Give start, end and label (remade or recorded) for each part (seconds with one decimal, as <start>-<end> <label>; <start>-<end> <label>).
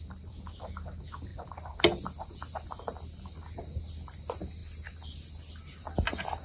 0.0-6.4 recorded